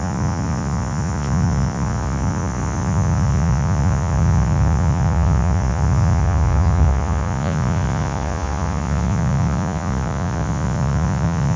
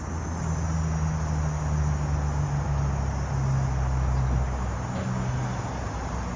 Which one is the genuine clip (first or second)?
second